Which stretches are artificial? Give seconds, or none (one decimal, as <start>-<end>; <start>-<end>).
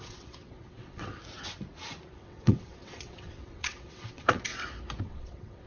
0.0-1.2; 2.1-4.5; 5.0-5.7